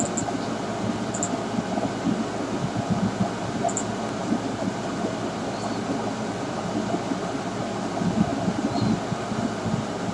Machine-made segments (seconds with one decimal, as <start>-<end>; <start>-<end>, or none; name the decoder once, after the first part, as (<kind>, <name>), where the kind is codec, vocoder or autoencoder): none